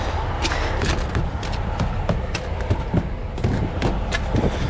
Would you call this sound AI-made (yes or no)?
no